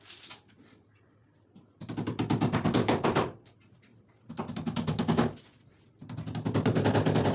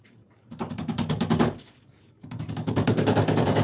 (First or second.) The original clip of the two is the first